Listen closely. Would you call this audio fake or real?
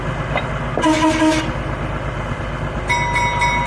real